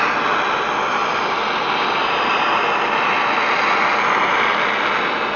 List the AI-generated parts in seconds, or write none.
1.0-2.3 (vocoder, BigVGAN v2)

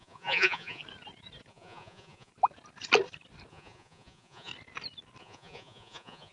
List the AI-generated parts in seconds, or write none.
0.0-0.8 (vocoder, Vocos); 1.5-2.3; 3.5-4.5; 5.2-6.3

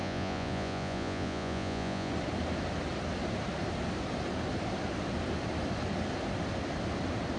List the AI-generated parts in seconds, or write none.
0.0-2.1 (vocoder, Vocos)

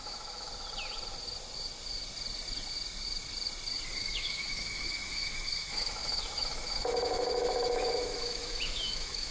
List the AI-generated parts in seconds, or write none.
0.0-0.5 (autoencoder, DAC-VAE); 4.0-9.3